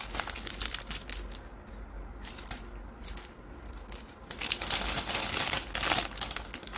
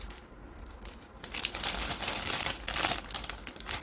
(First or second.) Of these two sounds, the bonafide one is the first